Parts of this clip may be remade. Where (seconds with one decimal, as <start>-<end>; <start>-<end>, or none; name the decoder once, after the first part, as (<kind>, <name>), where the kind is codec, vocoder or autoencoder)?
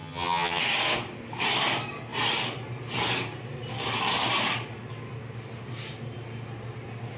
0.0-0.6 (vocoder, HiFi-GAN)